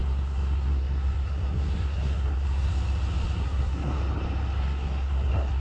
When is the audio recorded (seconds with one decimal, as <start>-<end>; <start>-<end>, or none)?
2.7-3.4; 4.0-4.6